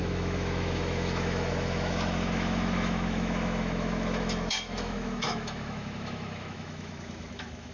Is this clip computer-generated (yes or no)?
yes